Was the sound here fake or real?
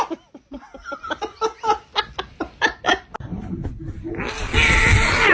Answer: real